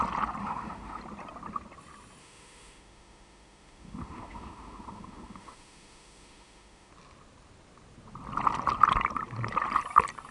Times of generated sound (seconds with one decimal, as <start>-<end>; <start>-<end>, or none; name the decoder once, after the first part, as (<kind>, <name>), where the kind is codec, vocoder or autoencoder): 0.4-1.0 (autoencoder, DAC-VAE); 2.2-6.9